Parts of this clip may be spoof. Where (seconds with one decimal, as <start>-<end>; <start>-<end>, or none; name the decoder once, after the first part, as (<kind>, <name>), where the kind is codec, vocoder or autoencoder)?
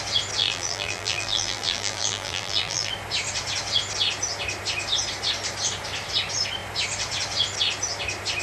0.4-2.9 (vocoder, BigVGAN v2)